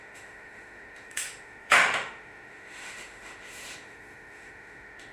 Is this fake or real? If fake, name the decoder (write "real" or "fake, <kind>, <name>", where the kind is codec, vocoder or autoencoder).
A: fake, autoencoder, DAC-VAE